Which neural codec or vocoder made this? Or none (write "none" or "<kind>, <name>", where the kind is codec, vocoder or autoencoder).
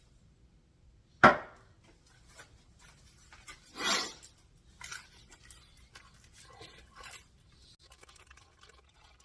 none